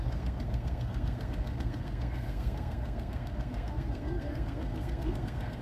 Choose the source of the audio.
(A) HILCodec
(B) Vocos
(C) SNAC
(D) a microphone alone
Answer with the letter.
C